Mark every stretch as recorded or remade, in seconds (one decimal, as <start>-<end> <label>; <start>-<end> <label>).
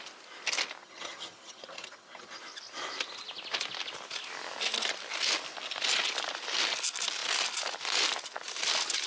0.0-0.8 recorded; 0.8-2.4 remade; 2.4-9.1 recorded